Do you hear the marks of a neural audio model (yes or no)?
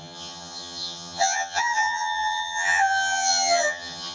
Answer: yes